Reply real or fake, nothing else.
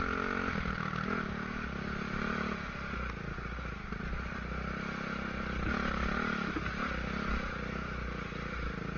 real